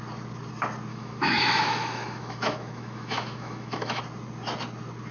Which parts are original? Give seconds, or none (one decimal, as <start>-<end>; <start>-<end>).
0.0-0.9; 4.0-5.1